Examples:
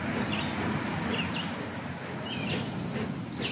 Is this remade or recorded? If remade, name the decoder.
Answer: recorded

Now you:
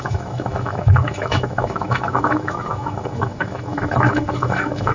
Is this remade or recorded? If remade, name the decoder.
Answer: remade, autoencoder, DAC-VAE